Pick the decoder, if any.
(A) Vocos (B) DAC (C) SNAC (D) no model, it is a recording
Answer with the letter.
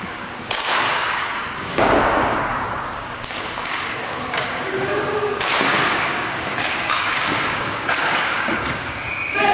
B